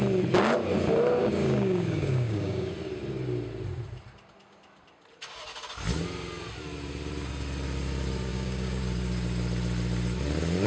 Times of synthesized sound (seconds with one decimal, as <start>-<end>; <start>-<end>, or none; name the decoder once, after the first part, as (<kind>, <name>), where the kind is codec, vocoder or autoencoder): 1.2-2.7 (codec, DAC); 8.3-8.8